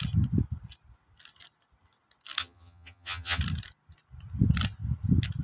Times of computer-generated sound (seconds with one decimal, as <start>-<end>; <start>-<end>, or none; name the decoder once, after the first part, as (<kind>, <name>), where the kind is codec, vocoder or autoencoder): 2.4-3.4 (vocoder, HiFi-GAN)